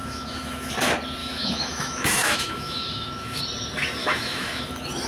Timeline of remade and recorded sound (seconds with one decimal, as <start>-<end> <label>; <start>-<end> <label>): 0.0-0.7 remade; 0.7-1.2 recorded; 1.2-3.4 remade; 3.4-4.0 recorded; 4.0-4.6 remade; 4.6-5.1 recorded